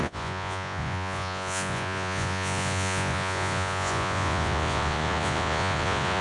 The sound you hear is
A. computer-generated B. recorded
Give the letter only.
A